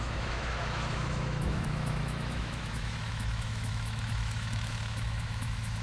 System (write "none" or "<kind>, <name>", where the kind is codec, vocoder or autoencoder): autoencoder, DAC-VAE